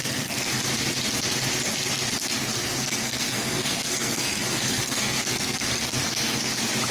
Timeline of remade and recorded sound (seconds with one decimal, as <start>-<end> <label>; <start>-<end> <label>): 0.0-0.5 remade; 0.5-2.4 recorded; 2.4-6.5 remade; 6.5-6.9 recorded